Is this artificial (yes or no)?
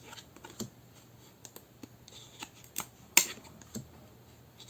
no